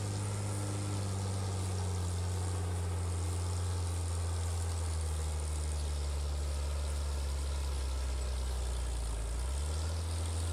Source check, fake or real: real